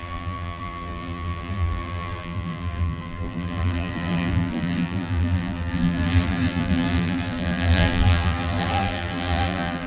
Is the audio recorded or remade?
remade